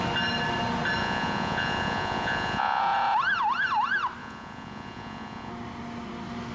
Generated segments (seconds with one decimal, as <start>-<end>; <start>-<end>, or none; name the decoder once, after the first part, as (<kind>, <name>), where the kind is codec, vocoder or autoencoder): 1.0-2.8 (vocoder, Vocos); 4.2-5.5